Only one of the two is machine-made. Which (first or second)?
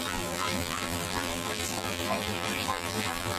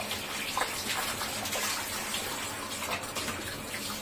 first